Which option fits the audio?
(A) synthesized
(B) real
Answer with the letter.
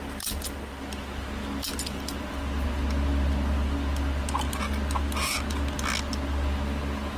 B